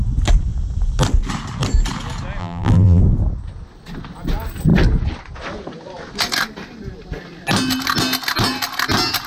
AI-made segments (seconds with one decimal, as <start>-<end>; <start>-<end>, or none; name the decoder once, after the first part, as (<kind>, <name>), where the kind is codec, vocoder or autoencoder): 2.4-3.0 (vocoder, BigVGAN v2)